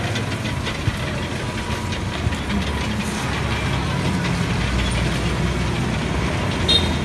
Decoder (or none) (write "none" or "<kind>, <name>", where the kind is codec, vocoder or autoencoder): none